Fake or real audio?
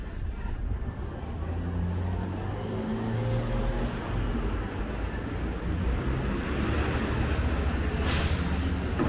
real